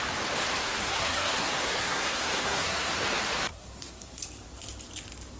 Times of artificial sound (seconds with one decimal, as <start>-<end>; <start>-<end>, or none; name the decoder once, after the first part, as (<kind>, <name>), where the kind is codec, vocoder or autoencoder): 0.5-2.9 (codec, SNAC); 3.5-4.2